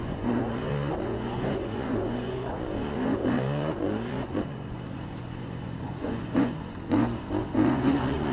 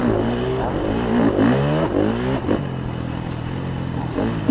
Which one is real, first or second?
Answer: second